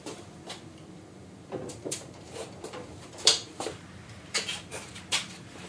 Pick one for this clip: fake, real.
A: fake